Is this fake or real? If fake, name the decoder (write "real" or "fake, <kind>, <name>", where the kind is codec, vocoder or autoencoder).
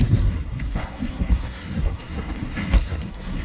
fake, codec, SNAC